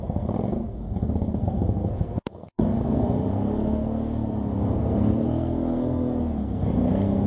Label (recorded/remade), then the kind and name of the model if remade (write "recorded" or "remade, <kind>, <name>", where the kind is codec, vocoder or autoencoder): remade, codec, SNAC